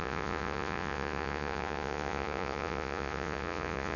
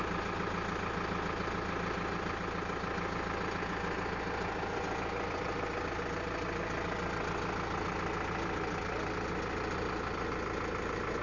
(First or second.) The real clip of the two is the second